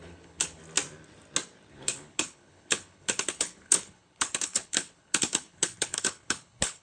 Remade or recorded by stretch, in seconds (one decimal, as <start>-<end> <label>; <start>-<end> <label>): 0.0-0.6 remade; 0.6-1.7 recorded; 1.7-6.8 remade